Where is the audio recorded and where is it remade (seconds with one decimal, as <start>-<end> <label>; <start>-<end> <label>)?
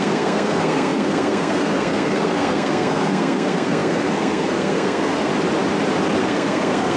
0.0-5.3 remade; 5.3-6.2 recorded; 6.2-7.0 remade